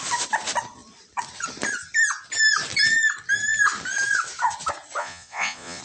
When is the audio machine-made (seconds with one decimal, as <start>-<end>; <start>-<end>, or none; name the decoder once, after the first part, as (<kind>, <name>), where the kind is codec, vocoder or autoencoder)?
5.0-5.8 (vocoder, Vocos)